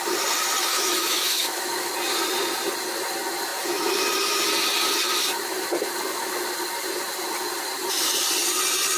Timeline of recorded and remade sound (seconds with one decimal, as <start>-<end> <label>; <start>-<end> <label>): 0.0-0.7 recorded; 0.7-1.9 remade; 1.9-9.0 recorded